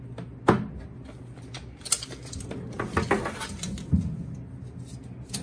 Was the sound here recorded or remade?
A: recorded